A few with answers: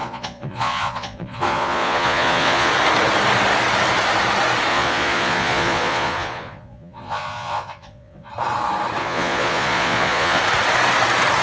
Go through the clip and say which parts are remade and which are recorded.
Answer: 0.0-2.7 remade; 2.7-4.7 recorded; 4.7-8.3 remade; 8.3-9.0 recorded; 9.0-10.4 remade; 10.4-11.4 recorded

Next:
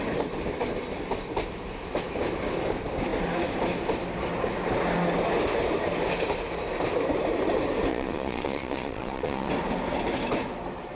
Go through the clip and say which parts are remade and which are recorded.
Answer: 0.0-7.9 recorded; 7.9-9.5 remade; 9.5-10.9 recorded

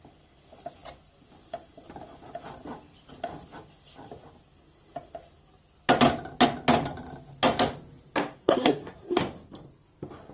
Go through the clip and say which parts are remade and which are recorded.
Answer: 0.0-8.4 recorded; 8.4-9.2 remade; 9.2-10.3 recorded

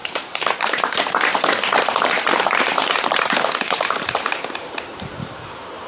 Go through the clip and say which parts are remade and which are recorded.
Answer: 0.0-5.9 remade

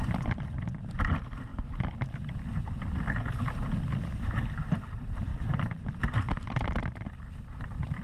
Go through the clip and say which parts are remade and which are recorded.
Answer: 0.0-8.0 remade

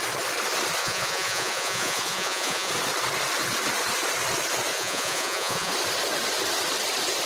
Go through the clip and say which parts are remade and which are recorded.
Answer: 0.0-0.8 recorded; 0.8-2.7 remade; 2.7-4.7 recorded; 4.7-5.7 remade; 5.7-7.3 recorded